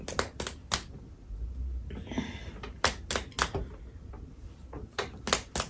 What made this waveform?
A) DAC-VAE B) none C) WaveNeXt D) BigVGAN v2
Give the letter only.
B